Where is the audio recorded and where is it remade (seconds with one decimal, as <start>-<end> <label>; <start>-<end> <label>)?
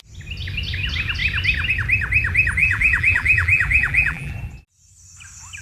0.0-2.6 recorded; 2.6-4.3 remade; 4.3-5.6 recorded